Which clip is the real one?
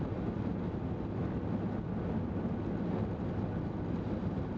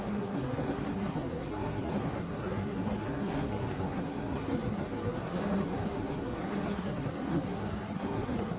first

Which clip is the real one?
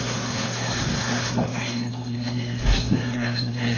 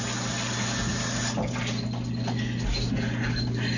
second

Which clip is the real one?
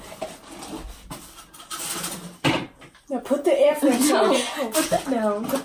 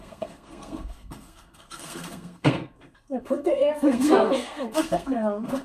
first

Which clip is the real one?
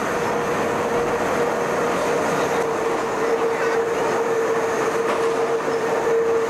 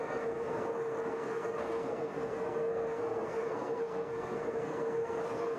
first